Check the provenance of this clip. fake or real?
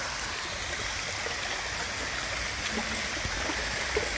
real